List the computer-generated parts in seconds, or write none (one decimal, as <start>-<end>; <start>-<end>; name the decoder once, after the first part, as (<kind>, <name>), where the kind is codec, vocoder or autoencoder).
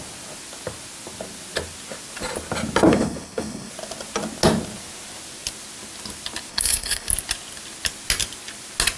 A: 2.9-3.7 (codec, HILCodec); 6.5-7.1